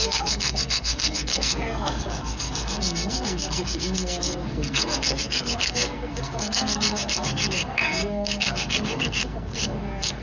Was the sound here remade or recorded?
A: remade